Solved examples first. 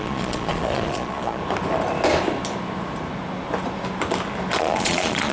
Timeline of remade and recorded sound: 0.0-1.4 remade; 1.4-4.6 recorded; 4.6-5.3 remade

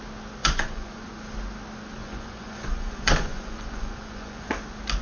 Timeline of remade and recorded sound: 0.0-0.4 recorded; 0.4-1.0 remade; 1.0-2.0 recorded; 2.0-4.5 remade; 4.5-5.0 recorded

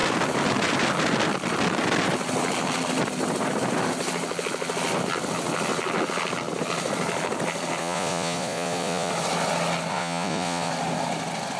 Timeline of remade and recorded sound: 0.0-7.8 recorded; 7.8-9.1 remade; 9.1-9.9 recorded; 9.9-10.7 remade; 10.7-11.6 recorded

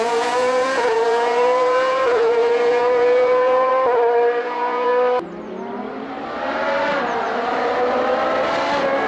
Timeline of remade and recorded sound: 0.0-3.7 remade; 3.7-4.4 recorded; 4.4-4.9 remade; 4.9-9.1 recorded